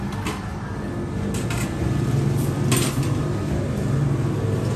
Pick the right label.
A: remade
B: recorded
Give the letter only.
B